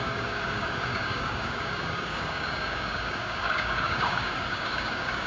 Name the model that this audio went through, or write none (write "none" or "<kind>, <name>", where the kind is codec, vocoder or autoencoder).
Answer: codec, DAC